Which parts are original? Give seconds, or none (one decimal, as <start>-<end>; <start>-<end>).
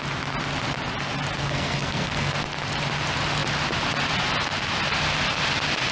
0.0-1.4; 2.3-5.9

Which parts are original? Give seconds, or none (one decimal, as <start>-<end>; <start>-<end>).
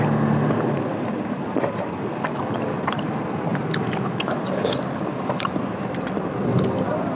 0.0-7.1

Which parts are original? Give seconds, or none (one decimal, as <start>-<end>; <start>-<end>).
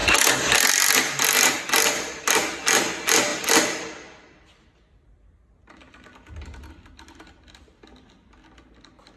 0.0-9.2